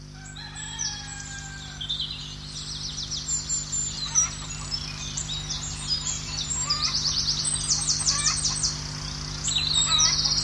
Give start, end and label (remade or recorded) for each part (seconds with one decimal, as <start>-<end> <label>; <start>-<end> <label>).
0.0-3.8 recorded; 3.8-7.4 remade; 7.4-10.4 recorded